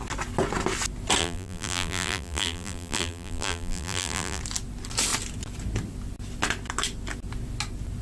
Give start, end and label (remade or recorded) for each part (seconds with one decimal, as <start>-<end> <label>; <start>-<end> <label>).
0.0-1.2 recorded; 1.2-4.4 remade; 4.4-8.0 recorded